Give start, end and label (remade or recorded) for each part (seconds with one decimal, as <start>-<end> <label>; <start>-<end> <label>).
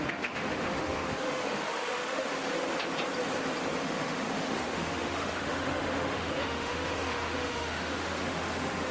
0.0-2.3 remade; 2.3-3.8 recorded; 3.8-8.9 remade